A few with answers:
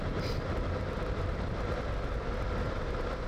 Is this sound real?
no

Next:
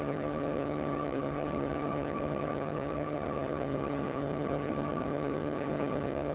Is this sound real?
no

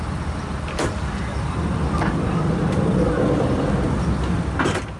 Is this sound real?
yes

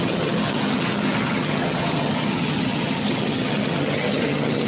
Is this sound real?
no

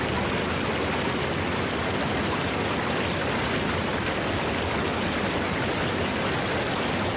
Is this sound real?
yes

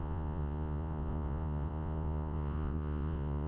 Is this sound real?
no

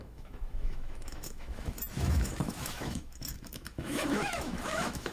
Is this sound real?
no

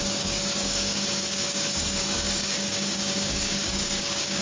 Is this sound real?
no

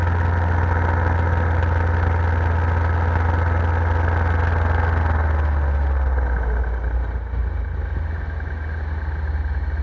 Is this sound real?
yes